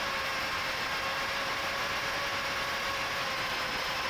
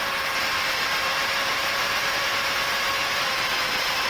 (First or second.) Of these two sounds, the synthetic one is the second